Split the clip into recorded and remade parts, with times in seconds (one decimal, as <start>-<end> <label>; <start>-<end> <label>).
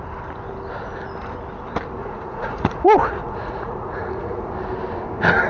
0.0-2.0 recorded; 2.0-4.5 remade; 4.5-5.5 recorded